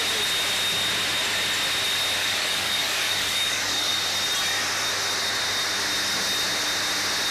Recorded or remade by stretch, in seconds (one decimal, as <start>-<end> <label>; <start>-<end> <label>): 0.0-2.2 recorded; 2.2-4.0 remade; 4.0-7.3 recorded